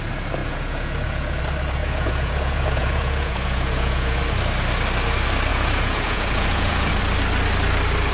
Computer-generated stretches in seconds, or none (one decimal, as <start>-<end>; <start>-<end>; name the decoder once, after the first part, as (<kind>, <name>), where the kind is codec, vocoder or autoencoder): 0.4-1.4 (vocoder, Vocos); 1.8-4.2; 5.5-7.0